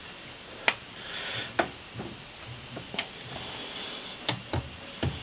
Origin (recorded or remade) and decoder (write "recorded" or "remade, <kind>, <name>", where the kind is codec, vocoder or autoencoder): recorded